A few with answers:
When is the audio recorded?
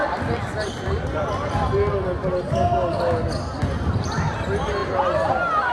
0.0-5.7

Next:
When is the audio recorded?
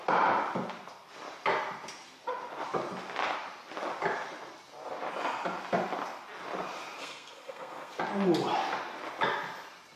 0.0-7.0; 7.9-10.0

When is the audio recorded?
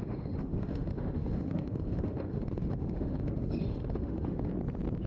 4.5-5.1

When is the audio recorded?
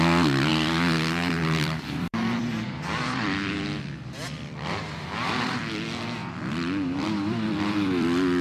0.0-0.5; 3.4-6.2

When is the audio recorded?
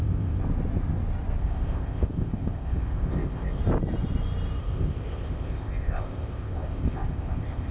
0.4-1.4; 3.6-4.6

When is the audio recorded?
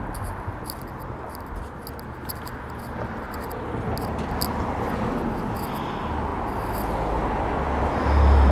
0.0-8.5